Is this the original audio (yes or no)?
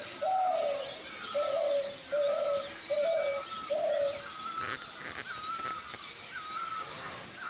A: yes